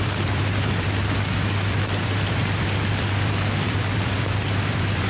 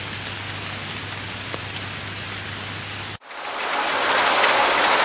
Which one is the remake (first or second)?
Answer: first